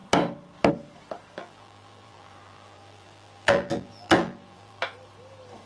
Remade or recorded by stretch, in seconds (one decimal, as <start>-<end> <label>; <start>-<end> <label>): 0.0-1.4 recorded; 1.4-4.8 remade; 4.8-5.7 recorded